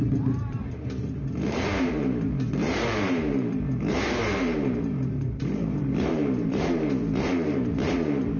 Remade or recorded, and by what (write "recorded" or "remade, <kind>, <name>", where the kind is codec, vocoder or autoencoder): remade, vocoder, BigVGAN v2